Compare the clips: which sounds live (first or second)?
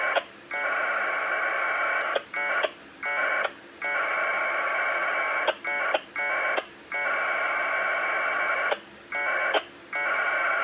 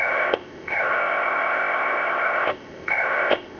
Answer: first